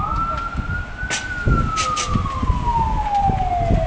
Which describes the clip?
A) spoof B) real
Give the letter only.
B